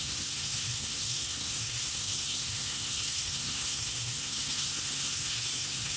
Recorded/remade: remade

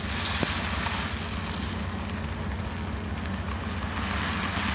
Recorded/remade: recorded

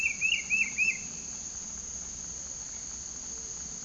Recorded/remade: recorded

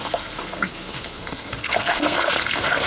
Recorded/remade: remade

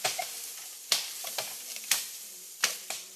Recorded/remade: recorded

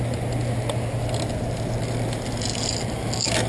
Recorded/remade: recorded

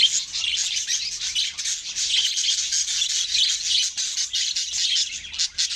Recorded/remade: recorded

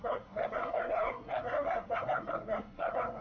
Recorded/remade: remade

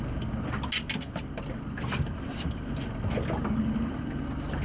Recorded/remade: recorded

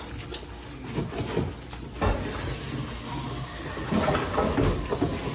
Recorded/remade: recorded